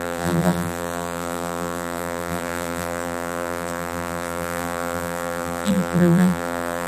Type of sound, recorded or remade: remade